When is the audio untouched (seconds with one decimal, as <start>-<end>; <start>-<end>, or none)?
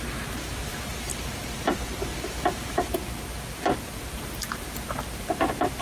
0.0-0.7; 1.7-2.1